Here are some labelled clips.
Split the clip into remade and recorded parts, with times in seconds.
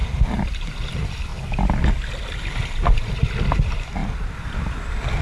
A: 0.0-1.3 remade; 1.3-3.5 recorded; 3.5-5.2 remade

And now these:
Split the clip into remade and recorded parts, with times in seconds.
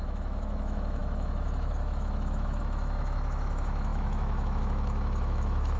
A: 0.0-5.8 remade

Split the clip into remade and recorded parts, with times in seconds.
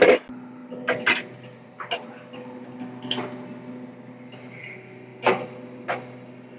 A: 0.0-6.6 recorded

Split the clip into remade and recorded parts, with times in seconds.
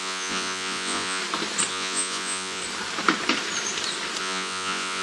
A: 0.0-1.2 remade; 1.2-1.7 recorded; 1.7-2.6 remade; 2.6-4.2 recorded; 4.2-5.0 remade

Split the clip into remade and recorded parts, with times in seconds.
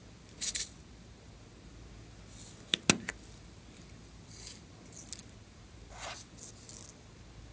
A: 0.0-7.5 recorded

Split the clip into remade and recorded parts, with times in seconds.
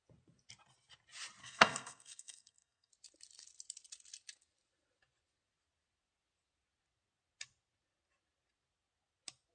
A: 0.0-1.4 recorded; 1.4-2.9 remade; 2.9-9.5 recorded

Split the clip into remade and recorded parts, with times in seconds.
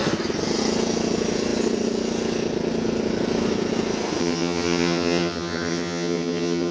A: 0.0-4.2 recorded; 4.2-6.7 remade